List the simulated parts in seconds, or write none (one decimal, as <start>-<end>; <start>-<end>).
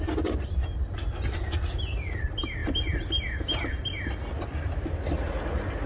none